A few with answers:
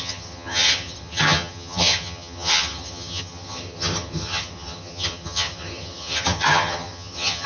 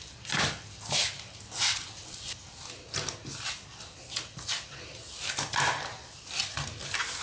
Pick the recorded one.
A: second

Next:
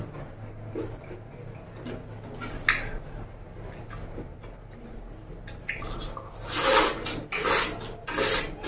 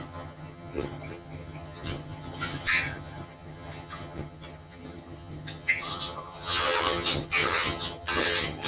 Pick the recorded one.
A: first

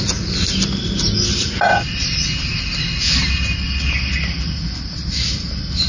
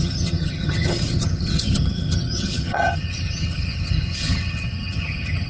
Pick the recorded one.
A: first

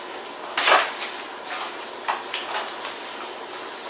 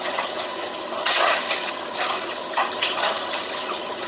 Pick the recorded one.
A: first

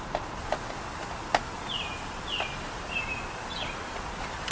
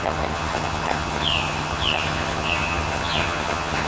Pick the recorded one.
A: first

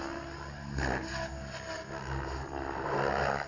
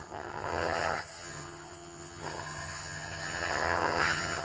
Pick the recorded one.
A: first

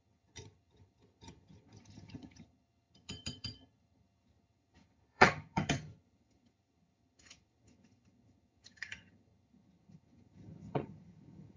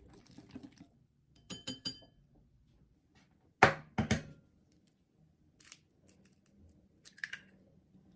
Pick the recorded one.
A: second